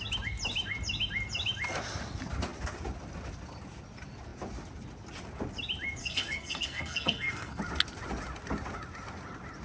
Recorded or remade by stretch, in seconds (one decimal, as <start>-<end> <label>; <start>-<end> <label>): 0.0-6.0 recorded; 6.0-7.6 remade; 7.6-9.6 recorded